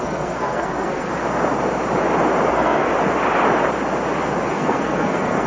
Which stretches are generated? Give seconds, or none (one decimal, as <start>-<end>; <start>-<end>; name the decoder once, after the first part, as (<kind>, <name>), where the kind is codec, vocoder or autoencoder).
0.0-1.1 (codec, SNAC); 2.5-2.9; 4.5-5.5